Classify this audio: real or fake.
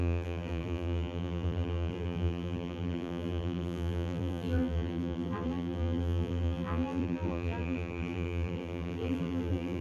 fake